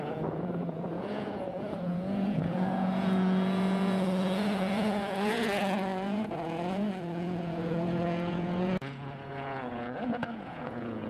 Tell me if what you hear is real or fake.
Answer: fake